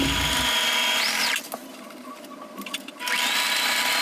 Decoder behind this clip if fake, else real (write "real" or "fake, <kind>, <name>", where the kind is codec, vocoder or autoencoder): real